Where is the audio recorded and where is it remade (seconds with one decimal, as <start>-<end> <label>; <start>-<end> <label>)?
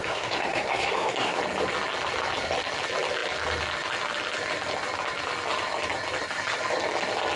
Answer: 0.0-1.4 remade; 1.4-7.4 recorded